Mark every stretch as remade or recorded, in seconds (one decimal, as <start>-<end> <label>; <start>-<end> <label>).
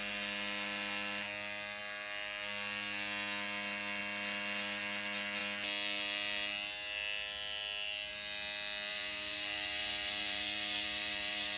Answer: 0.0-8.9 recorded; 8.9-11.6 remade